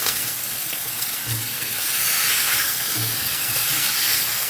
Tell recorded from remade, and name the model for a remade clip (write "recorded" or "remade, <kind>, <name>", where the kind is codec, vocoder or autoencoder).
remade, codec, SNAC